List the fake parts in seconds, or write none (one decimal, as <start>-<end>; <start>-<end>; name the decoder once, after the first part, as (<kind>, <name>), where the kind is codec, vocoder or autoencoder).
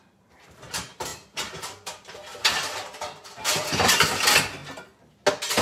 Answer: 0.0-4.6 (vocoder, BigVGAN v2)